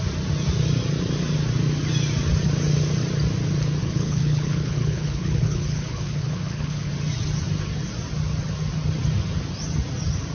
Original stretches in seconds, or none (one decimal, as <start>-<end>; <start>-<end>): 0.0-3.8; 6.9-10.3